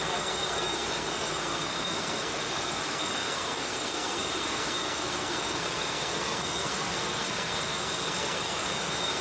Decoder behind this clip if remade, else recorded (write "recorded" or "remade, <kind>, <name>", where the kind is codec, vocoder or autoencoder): remade, codec, SNAC